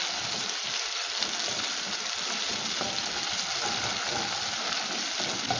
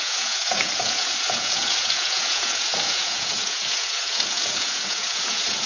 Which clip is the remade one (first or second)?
second